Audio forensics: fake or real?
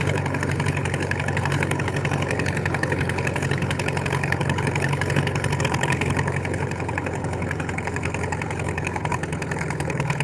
fake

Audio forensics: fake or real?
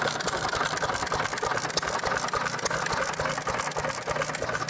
real